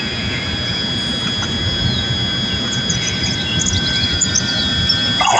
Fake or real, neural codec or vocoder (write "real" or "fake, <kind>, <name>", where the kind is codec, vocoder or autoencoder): real